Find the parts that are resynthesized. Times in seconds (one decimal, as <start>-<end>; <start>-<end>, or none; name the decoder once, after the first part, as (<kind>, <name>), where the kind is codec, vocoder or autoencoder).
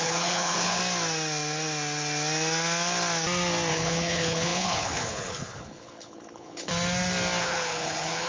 0.0-0.8 (codec, HILCodec); 3.7-6.7; 7.4-8.3